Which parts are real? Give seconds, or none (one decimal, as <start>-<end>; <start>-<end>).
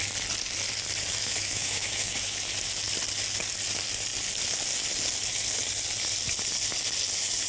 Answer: 0.0-1.1; 2.4-7.5